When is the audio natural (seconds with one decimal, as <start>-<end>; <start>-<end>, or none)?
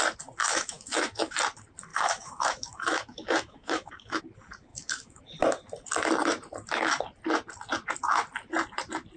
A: 0.0-0.4; 1.4-1.9; 4.2-4.7; 5.2-9.2